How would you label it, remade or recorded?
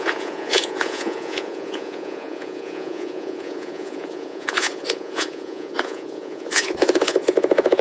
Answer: remade